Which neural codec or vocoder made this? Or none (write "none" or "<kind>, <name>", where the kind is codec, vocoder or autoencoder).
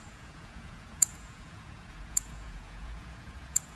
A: vocoder, Vocos